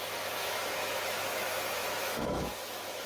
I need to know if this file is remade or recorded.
remade